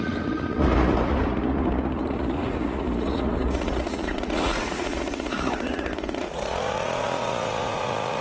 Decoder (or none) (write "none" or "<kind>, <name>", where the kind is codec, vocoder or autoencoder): vocoder, Vocos